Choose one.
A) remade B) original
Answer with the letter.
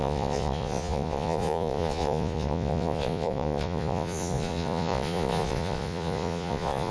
A